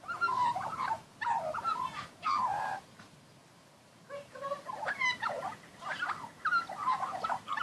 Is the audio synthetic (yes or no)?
yes